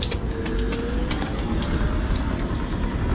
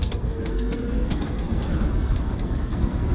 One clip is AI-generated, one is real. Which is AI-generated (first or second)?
second